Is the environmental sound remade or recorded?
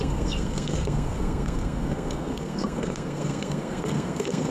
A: remade